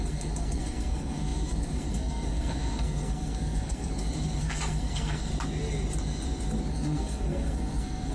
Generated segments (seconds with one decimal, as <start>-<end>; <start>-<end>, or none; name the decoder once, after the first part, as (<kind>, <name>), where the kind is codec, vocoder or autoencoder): 0.0-3.9 (codec, SNAC); 4.4-5.3; 6.7-8.1